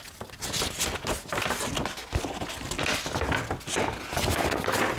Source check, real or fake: real